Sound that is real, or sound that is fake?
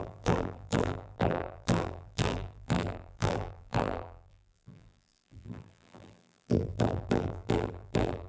fake